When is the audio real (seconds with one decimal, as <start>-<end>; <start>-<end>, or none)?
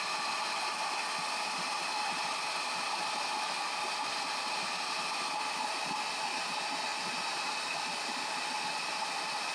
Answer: 0.0-9.5